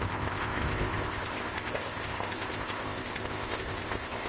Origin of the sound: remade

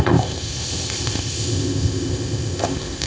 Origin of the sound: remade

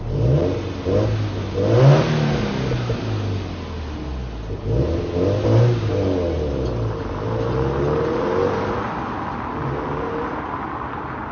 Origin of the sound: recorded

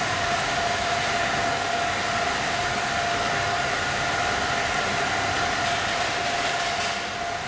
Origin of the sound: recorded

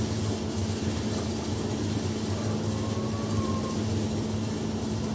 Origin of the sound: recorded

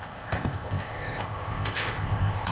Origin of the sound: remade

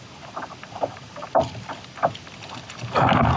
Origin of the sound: recorded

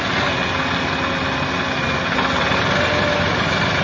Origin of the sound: recorded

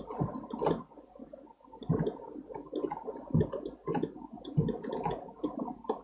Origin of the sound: recorded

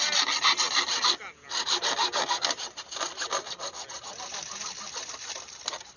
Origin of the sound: recorded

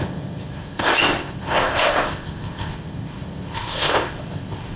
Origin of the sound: remade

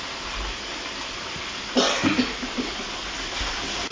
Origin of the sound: recorded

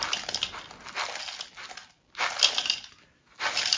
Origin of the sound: recorded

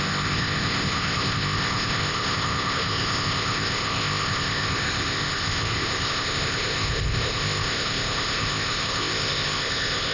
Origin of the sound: remade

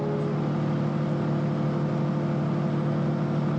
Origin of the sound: recorded